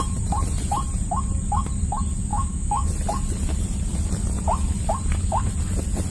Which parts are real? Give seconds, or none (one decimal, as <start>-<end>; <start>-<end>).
0.0-2.3; 2.9-6.1